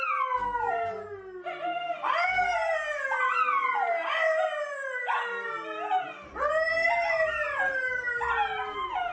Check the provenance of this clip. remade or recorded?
recorded